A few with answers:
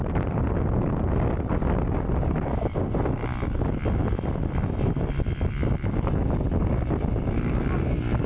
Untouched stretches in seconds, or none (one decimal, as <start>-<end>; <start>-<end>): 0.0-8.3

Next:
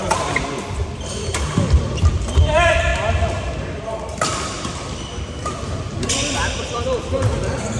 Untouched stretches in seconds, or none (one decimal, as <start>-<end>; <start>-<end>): 2.9-4.1

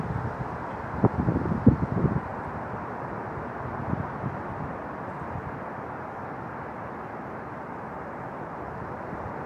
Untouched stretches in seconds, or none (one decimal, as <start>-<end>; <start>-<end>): 0.0-9.5